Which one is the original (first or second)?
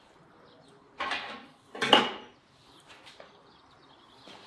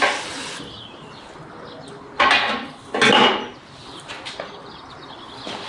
second